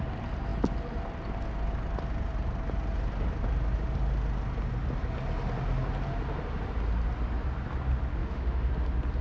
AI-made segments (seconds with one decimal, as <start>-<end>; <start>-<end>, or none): 8.2-8.7